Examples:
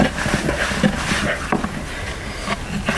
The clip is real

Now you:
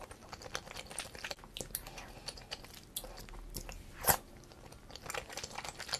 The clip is real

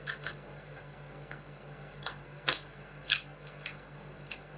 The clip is fake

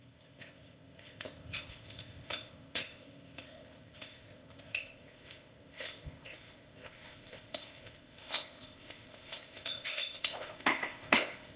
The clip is fake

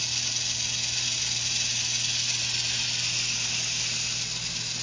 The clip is real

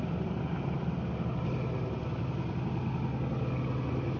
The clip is real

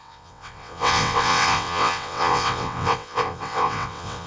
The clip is fake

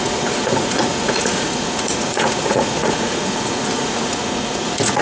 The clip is fake